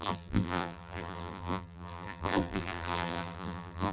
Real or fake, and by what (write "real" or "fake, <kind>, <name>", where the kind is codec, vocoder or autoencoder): fake, vocoder, BigVGAN v2